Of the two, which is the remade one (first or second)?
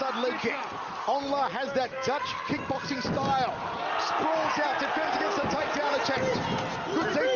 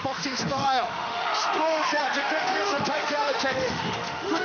second